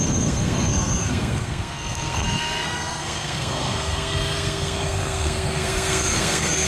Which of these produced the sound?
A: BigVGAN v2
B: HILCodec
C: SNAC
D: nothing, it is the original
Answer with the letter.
C